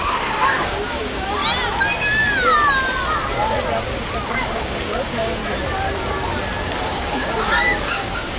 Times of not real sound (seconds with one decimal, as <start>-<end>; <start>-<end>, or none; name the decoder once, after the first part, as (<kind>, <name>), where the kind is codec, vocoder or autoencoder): 0.0-1.4 (codec, DAC); 4.3-5.4; 6.6-8.4